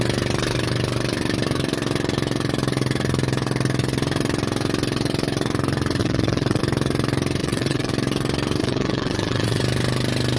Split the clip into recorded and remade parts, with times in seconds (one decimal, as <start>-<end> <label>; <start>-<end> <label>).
0.0-6.0 recorded; 6.0-6.6 remade; 6.6-7.4 recorded; 7.4-7.9 remade; 7.9-8.6 recorded; 8.6-9.6 remade; 9.6-10.4 recorded